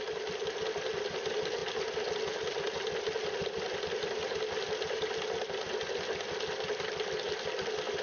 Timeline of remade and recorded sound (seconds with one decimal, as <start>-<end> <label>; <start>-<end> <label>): 0.0-8.0 recorded

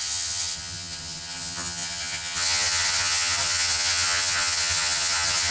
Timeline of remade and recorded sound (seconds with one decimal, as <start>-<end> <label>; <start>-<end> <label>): 0.0-5.5 remade

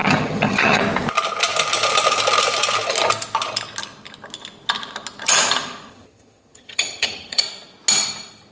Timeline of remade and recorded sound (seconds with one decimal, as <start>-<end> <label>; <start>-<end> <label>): 0.0-0.8 remade; 0.8-5.9 recorded; 5.9-7.4 remade; 7.4-8.5 recorded

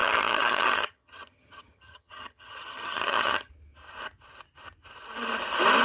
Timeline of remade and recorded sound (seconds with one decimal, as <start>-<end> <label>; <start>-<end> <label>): 0.0-3.5 remade; 3.5-5.8 recorded

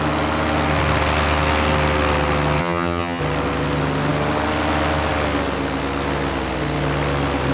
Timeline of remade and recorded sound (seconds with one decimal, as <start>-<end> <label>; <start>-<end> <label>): 0.0-2.6 recorded; 2.6-3.2 remade; 3.2-7.5 recorded